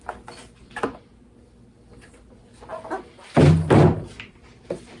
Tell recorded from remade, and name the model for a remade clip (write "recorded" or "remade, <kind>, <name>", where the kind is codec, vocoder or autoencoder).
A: recorded